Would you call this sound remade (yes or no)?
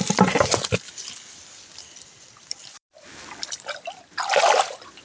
yes